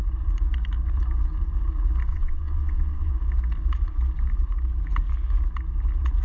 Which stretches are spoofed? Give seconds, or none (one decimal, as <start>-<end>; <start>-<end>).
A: 2.1-3.1

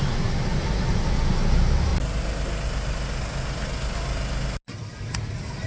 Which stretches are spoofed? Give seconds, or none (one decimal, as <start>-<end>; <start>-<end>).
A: none

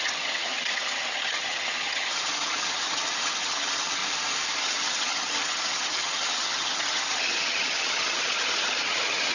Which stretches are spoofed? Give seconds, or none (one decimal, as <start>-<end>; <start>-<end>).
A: 0.0-4.0; 4.6-9.3

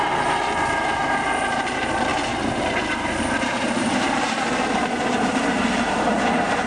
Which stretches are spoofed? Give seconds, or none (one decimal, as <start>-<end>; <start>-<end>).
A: 0.0-6.7

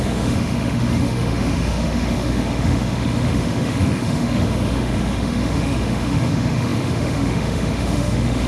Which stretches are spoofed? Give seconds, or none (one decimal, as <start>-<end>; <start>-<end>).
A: 0.0-8.5